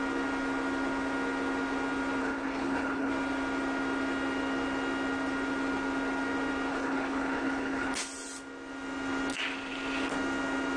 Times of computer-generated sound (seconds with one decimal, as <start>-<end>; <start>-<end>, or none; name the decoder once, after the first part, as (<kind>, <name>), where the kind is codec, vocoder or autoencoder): 2.2-3.1 (codec, HILCodec); 6.7-7.9